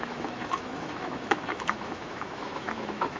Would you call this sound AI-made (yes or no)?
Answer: yes